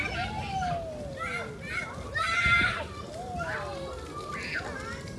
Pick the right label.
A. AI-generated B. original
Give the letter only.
B